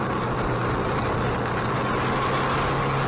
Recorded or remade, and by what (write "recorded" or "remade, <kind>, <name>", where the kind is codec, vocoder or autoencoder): recorded